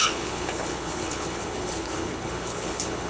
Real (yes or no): no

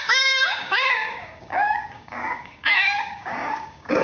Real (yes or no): no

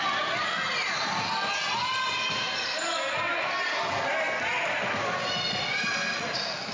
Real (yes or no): yes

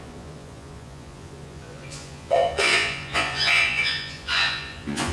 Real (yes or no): no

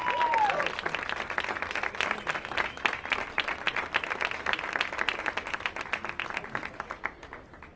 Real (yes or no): yes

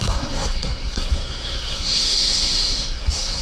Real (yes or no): no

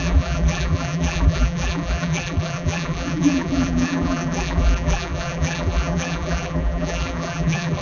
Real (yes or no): no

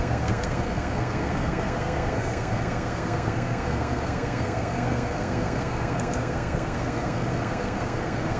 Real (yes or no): no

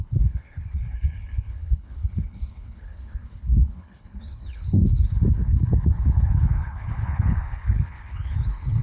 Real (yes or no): no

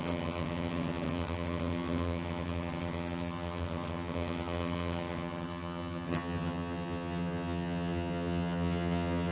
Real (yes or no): no